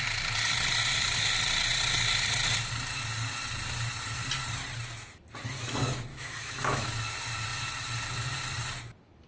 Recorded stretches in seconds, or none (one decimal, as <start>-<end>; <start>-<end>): 0.0-6.1; 6.9-9.3